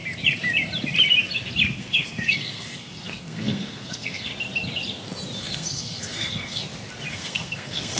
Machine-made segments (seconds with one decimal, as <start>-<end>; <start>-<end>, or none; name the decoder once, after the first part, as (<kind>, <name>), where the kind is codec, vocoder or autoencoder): 1.8-4.3 (codec, SNAC); 5.4-6.6; 7.1-8.0

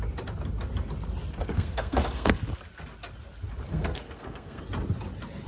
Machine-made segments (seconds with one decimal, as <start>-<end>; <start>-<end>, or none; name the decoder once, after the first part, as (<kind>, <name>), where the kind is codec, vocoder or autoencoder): 1.4-2.4 (codec, SNAC); 3.7-4.6

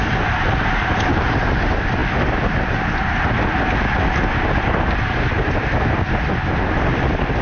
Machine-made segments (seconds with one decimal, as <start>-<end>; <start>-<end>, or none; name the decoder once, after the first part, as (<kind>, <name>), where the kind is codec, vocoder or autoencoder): none

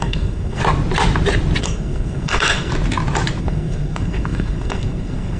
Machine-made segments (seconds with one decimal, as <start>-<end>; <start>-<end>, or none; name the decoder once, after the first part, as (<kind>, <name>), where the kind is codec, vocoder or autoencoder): 0.0-0.6 (codec, SNAC); 1.6-2.7; 3.4-5.4

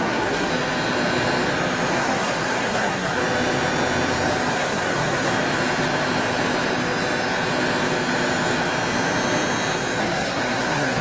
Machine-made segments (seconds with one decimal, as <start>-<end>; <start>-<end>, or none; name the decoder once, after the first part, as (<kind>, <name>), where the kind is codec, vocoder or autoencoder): 0.0-0.5 (codec, SNAC); 1.9-3.2; 4.5-5.3; 10.0-11.0

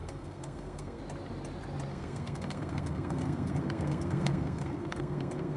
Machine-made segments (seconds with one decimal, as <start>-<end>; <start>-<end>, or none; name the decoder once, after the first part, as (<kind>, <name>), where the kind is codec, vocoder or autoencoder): 0.0-1.0 (codec, SNAC); 1.9-5.6

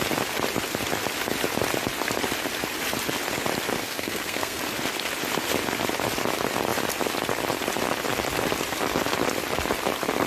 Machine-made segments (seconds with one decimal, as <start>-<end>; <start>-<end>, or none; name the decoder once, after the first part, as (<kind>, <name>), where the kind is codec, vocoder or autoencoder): 3.8-4.6 (codec, SNAC)

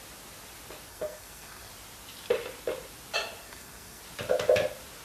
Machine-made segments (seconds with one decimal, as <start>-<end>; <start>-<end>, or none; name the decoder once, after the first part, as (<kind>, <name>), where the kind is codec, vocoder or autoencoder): 0.9-1.7 (codec, SNAC); 3.4-4.0